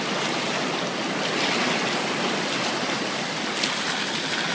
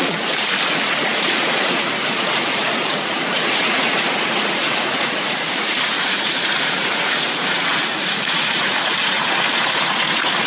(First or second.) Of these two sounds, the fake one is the second